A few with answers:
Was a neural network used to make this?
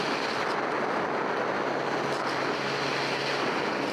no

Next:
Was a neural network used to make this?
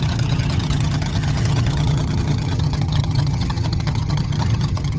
yes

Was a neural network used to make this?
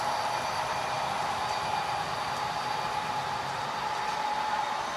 no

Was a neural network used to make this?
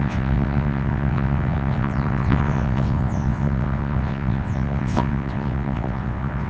yes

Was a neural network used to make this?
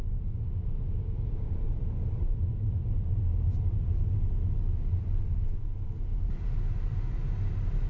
no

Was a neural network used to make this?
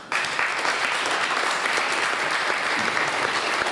yes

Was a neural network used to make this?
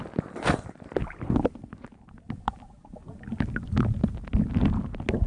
no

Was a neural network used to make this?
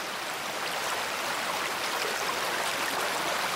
no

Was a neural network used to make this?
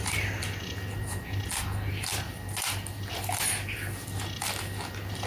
no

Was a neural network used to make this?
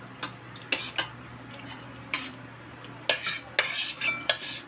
no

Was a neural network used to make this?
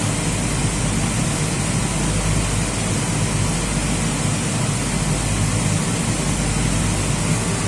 no